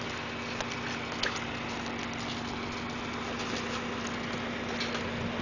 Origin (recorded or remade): recorded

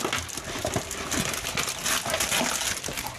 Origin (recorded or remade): recorded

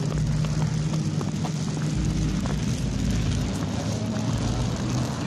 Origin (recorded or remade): recorded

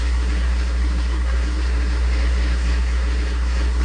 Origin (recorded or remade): remade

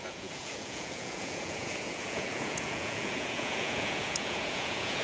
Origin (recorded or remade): remade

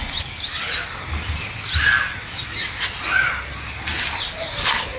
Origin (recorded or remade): recorded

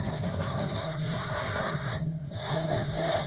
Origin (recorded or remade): remade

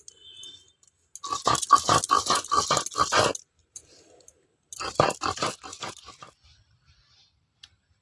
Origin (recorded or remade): recorded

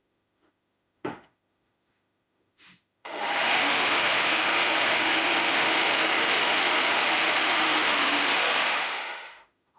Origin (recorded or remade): remade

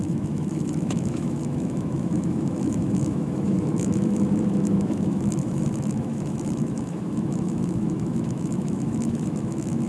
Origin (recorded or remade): remade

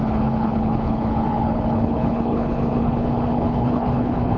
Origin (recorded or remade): remade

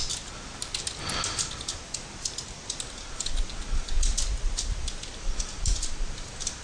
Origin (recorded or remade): recorded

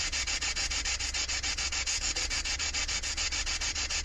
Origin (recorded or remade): remade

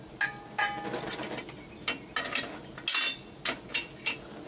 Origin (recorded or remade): recorded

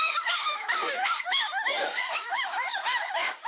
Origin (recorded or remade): remade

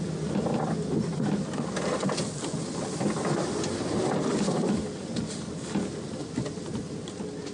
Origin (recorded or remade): recorded